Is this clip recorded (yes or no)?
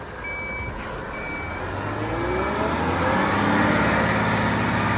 yes